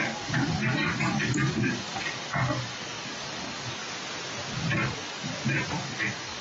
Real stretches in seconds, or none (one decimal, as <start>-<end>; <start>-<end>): 3.8-4.7; 5.3-5.8